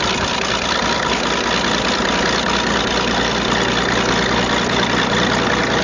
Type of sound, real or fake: real